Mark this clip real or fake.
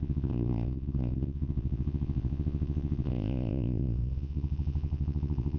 fake